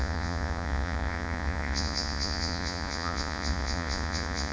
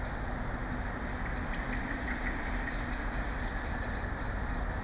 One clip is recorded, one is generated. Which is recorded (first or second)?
second